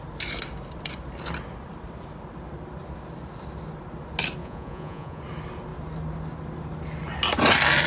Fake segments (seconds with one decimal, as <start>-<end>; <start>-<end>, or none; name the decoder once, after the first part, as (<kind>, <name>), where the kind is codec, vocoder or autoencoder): 4.4-5.2 (vocoder, Vocos)